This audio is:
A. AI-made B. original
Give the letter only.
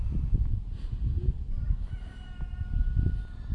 B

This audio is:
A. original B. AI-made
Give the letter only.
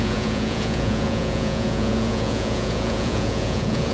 B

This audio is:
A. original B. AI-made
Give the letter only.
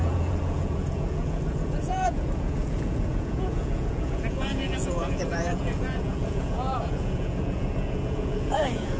B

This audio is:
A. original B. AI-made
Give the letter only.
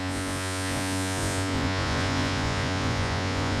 B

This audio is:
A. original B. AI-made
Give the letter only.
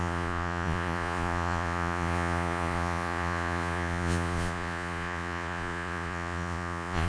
B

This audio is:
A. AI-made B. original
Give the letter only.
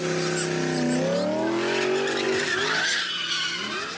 B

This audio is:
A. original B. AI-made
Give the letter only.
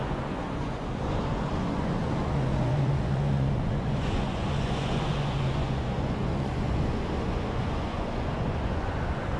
B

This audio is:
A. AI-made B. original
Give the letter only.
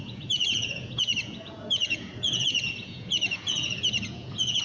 A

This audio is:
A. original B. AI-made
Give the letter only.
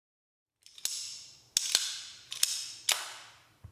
A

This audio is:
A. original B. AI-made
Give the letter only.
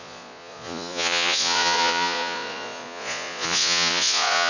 B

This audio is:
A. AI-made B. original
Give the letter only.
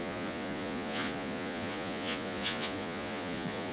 A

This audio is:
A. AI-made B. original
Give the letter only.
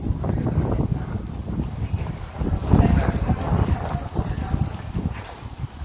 B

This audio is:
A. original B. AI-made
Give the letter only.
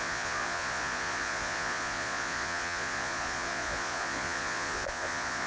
B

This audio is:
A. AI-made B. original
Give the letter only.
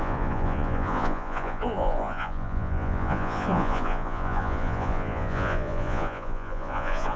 A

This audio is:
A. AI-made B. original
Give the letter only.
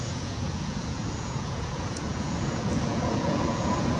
A